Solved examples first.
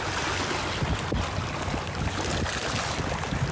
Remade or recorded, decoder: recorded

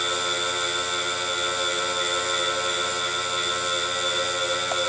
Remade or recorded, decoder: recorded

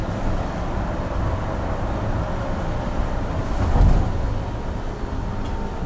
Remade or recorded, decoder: recorded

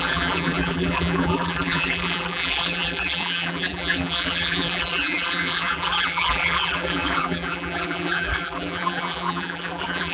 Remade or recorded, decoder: remade, vocoder, BigVGAN v2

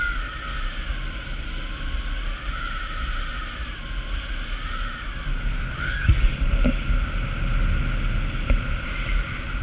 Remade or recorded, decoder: recorded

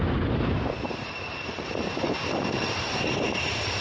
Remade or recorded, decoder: remade, vocoder, BigVGAN v2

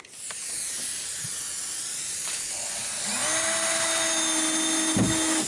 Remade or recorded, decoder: recorded